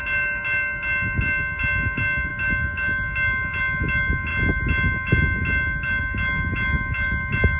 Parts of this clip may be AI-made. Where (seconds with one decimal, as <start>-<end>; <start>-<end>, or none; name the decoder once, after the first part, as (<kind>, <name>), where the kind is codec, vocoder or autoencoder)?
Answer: none